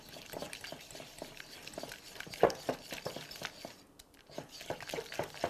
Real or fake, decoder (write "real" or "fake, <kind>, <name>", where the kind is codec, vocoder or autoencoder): real